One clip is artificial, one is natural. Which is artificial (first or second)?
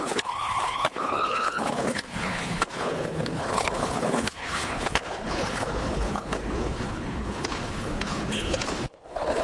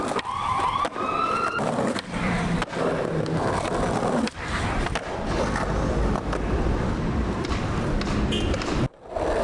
first